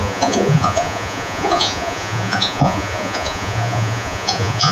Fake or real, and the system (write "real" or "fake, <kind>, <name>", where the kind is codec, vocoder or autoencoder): fake, vocoder, Vocos